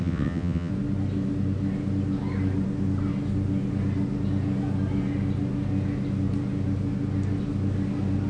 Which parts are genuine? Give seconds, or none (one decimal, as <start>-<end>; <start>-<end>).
0.7-8.3